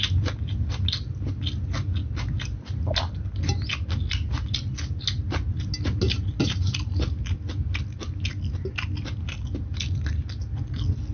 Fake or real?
real